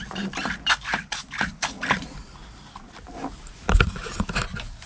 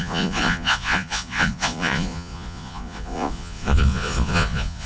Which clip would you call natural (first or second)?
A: first